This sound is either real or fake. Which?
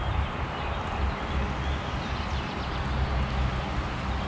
real